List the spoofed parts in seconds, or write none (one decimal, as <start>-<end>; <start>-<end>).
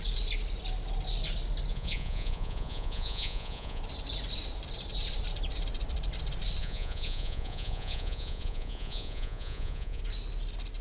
1.7-3.8; 6.6-10.0